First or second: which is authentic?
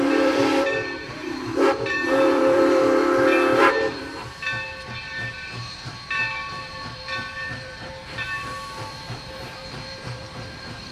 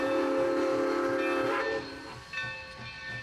second